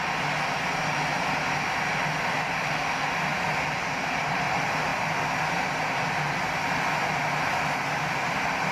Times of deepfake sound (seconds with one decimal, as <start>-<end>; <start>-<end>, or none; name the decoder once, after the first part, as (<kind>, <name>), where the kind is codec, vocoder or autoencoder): none

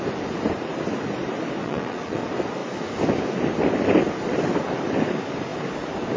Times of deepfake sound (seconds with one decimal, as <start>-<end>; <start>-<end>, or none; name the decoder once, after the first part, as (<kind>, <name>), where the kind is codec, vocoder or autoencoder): 1.6-2.2 (vocoder, Vocos)

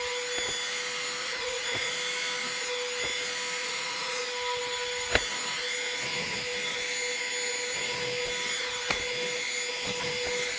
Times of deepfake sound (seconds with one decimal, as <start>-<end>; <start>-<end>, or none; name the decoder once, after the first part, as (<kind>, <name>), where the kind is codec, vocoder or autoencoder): 1.2-1.9 (vocoder, Vocos); 3.6-4.2